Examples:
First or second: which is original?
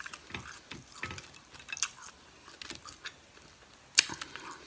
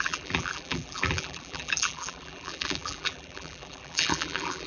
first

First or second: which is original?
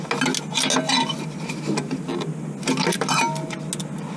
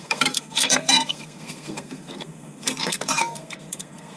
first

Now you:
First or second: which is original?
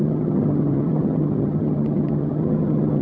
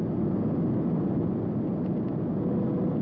second